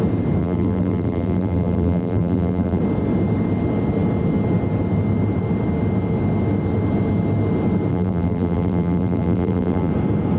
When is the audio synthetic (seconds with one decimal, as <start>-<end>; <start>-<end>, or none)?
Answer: 0.4-2.8; 7.9-9.9